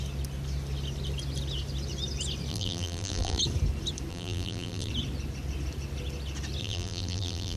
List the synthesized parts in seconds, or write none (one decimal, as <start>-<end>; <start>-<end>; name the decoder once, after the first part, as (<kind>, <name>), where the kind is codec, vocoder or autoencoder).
2.5-3.4 (vocoder, BigVGAN v2); 4.1-4.9; 6.6-7.6